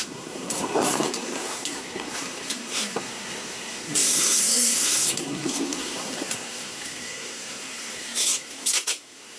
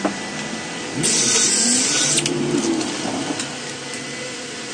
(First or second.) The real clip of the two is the second